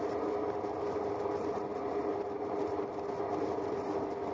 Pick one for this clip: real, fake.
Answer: real